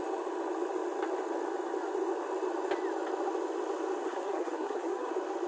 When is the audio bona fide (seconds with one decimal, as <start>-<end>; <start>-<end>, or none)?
0.0-4.0; 5.1-5.5